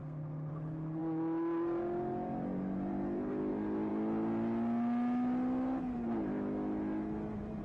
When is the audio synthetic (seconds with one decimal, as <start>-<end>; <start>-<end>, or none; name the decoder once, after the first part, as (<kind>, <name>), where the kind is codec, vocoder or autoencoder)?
0.0-0.5 (codec, SNAC)